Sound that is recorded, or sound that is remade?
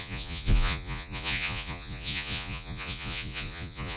remade